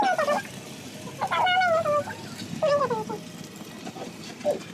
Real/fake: real